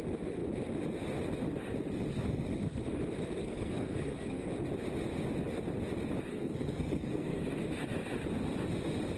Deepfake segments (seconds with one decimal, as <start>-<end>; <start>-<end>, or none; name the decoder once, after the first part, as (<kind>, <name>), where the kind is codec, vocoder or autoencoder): 3.4-4.5 (codec, SNAC); 6.3-7.4